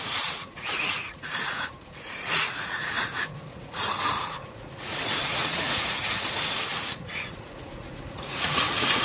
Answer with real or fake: fake